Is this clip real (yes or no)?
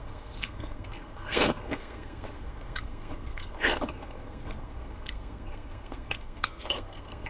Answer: no